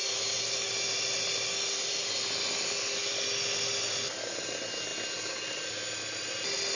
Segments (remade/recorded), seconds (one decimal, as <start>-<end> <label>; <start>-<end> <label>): 0.0-6.7 recorded